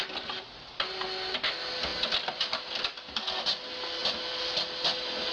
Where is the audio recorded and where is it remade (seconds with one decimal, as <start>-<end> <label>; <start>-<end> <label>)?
0.0-4.0 recorded; 4.0-5.3 remade